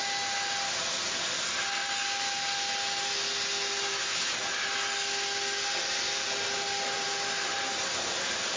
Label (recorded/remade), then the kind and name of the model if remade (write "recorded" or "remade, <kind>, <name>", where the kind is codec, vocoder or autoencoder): recorded